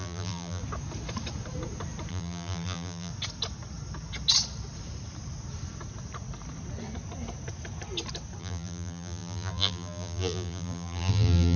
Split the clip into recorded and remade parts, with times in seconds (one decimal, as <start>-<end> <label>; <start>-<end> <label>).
0.0-0.6 remade; 0.6-2.1 recorded; 2.1-3.1 remade; 3.1-8.4 recorded; 8.4-11.6 remade